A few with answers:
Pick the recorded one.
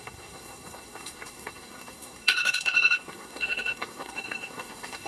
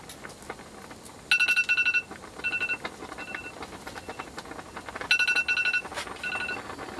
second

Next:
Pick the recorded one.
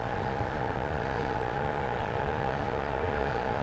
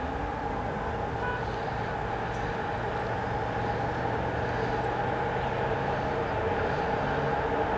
second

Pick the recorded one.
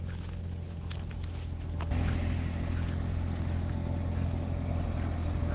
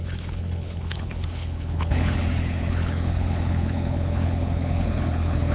first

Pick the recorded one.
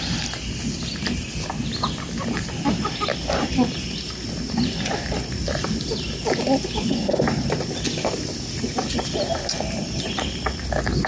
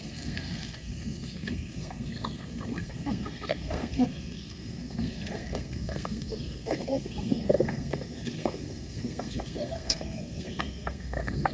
first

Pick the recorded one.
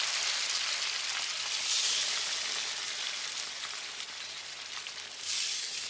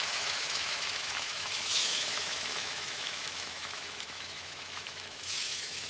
first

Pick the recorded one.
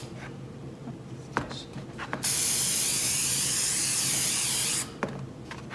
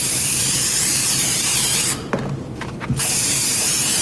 first